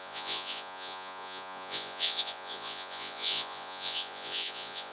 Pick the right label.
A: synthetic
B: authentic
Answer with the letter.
A